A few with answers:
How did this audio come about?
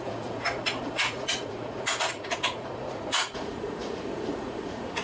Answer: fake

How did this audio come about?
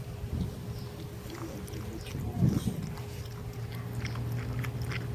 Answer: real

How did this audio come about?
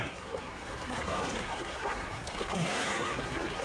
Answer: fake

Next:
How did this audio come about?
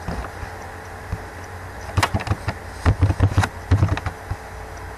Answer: real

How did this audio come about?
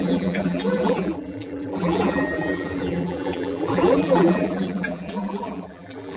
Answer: fake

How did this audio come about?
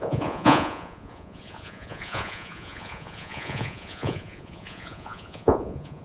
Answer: fake